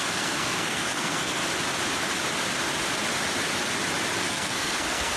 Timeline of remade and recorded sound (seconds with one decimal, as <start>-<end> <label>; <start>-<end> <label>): 0.0-1.4 remade; 1.4-4.2 recorded; 4.2-5.2 remade